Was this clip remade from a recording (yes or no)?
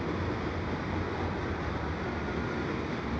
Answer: no